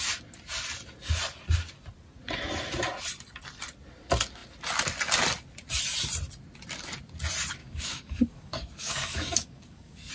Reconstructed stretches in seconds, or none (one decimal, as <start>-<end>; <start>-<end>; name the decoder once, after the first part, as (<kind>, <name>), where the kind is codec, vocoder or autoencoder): 7.6-10.1 (codec, DAC)